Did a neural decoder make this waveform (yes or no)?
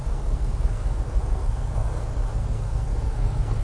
yes